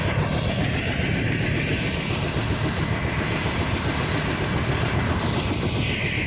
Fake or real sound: real